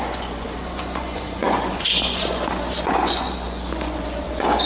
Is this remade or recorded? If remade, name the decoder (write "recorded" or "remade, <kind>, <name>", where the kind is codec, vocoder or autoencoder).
remade, vocoder, Vocos